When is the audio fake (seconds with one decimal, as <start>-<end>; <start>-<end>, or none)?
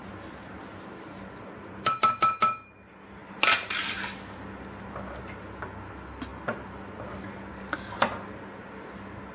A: none